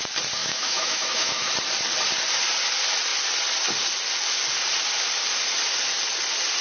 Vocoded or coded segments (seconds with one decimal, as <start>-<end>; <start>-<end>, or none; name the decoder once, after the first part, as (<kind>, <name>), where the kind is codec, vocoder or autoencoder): 0.4-1.5 (autoencoder, DAC-VAE)

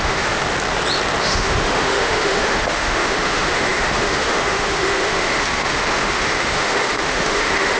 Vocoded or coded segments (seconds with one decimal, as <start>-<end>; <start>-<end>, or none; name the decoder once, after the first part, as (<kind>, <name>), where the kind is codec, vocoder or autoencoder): 0.0-0.4 (autoencoder, DAC-VAE); 1.2-7.8

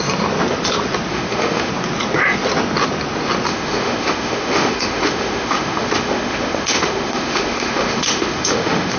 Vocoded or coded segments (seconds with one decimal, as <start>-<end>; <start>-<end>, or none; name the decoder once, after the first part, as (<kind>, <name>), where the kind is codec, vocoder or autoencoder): 1.1-1.7 (autoencoder, DAC-VAE); 3.5-9.0

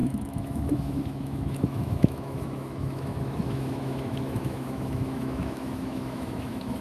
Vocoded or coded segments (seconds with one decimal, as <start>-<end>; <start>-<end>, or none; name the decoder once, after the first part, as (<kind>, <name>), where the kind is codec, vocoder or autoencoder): 0.0-6.8 (autoencoder, DAC-VAE)